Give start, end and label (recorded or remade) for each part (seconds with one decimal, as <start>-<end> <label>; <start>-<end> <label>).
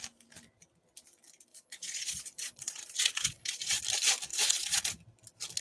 0.0-1.5 recorded; 1.5-3.8 remade; 3.8-4.3 recorded; 4.3-4.8 remade; 4.8-5.6 recorded